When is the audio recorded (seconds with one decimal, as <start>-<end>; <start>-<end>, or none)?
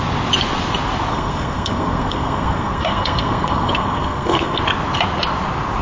0.0-1.1; 4.6-5.8